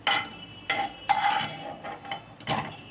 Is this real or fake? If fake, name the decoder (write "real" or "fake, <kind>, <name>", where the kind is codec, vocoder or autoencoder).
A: real